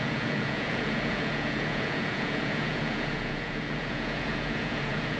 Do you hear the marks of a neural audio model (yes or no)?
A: yes